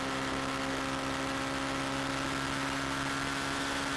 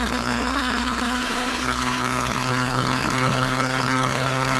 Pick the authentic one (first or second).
first